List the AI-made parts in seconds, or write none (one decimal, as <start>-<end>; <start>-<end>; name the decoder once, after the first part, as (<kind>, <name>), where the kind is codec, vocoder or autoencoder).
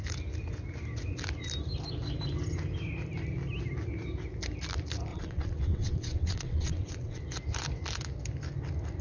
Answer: 5.1-7.2 (vocoder, WaveNeXt)